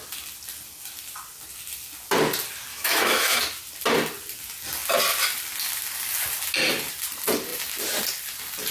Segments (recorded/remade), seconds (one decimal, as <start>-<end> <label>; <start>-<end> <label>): 0.0-2.7 recorded; 2.7-3.4 remade; 3.4-8.7 recorded